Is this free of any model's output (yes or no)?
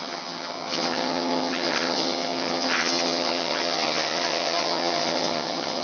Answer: no